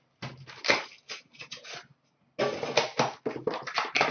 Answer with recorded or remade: recorded